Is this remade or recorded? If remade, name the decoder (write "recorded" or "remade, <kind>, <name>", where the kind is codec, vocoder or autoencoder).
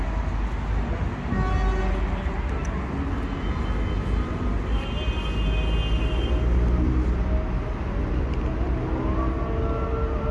recorded